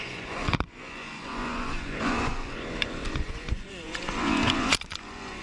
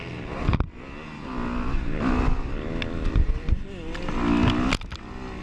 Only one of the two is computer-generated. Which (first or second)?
first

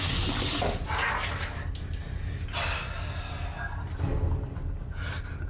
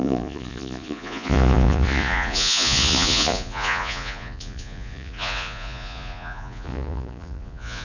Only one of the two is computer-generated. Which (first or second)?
second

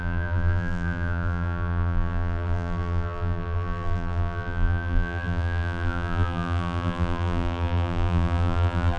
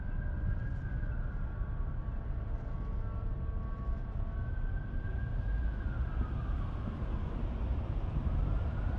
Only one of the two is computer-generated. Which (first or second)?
first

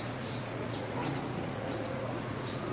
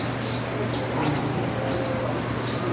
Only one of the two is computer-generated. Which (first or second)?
first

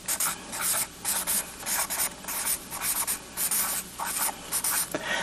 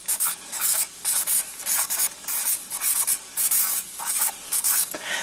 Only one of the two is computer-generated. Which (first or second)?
second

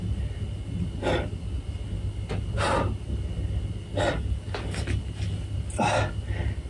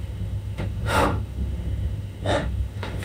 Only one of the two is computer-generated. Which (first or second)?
second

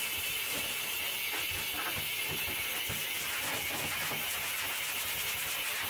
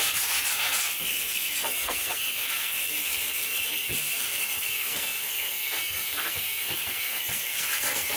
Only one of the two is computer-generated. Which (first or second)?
second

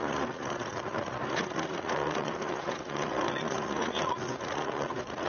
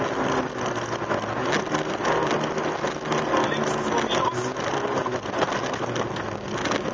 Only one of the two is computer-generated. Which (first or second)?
first